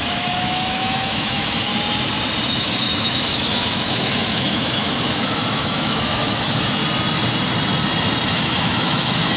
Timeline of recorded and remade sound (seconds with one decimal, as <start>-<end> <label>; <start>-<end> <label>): 0.0-1.7 remade; 1.7-2.5 recorded; 2.5-6.8 remade; 6.8-8.3 recorded; 8.3-9.4 remade